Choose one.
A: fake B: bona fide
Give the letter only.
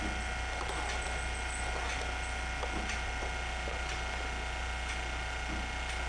B